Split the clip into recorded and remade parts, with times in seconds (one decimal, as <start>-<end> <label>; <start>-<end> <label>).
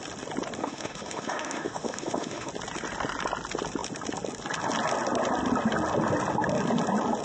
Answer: 0.0-0.6 recorded; 0.6-2.5 remade; 2.5-7.2 recorded